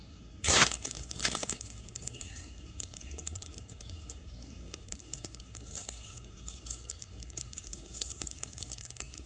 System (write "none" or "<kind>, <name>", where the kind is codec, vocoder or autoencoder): codec, SNAC